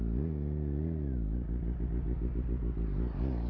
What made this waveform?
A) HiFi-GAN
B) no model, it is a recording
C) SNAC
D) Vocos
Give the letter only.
B